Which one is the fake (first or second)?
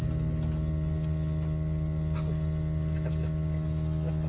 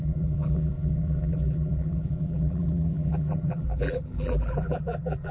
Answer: second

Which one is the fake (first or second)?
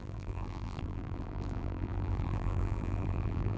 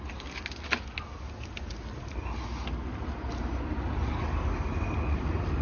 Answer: first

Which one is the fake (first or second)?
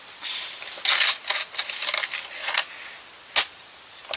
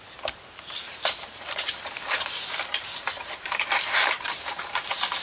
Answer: second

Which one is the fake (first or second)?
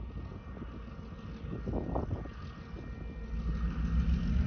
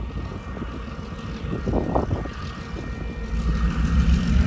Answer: second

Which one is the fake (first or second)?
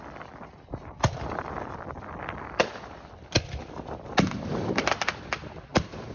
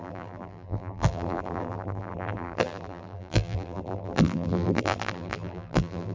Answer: second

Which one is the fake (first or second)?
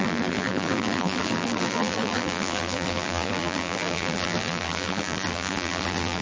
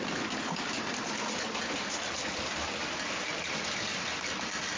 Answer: first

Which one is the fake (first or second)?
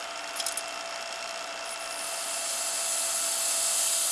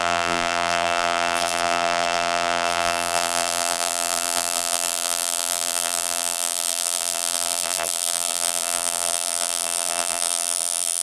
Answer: second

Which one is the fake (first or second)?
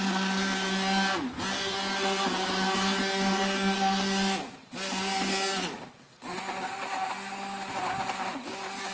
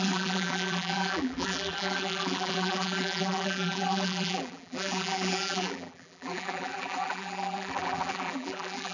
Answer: second